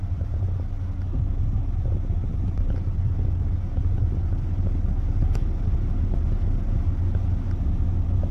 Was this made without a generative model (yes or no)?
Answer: yes